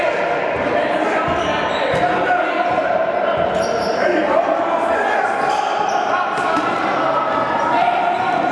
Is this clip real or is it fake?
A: real